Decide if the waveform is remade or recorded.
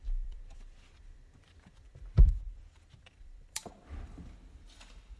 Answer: remade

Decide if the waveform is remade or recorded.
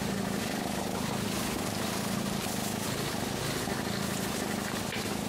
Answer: recorded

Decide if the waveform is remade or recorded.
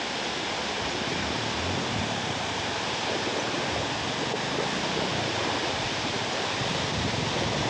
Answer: recorded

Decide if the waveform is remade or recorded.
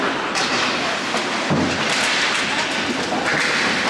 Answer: recorded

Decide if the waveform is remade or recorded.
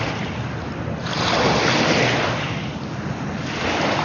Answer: recorded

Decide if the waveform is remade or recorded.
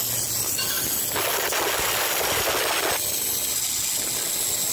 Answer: recorded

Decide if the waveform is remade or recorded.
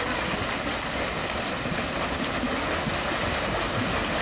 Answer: recorded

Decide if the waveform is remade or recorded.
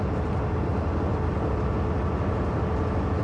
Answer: recorded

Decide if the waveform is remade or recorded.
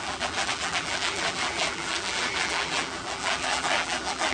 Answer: remade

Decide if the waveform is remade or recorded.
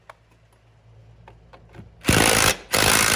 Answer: recorded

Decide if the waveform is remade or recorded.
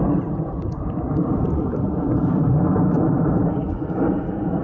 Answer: remade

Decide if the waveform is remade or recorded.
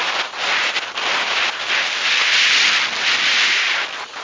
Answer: remade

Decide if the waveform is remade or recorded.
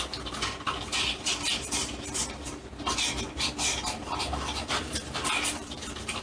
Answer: remade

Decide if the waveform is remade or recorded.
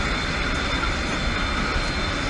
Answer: recorded